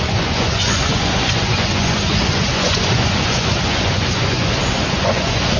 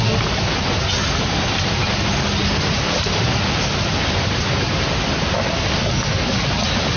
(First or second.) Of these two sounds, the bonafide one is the second